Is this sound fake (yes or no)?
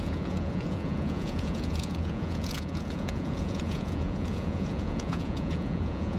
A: yes